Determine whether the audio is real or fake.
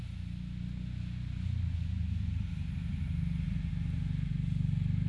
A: real